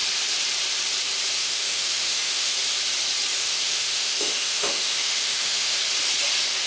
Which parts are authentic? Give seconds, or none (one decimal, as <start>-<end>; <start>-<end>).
0.0-1.4; 2.5-3.4; 5.8-6.7